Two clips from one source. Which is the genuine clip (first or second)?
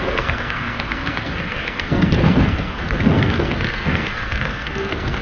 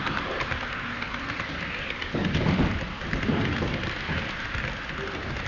second